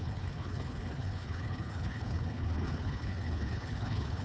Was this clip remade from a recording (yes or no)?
yes